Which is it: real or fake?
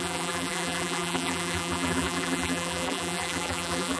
fake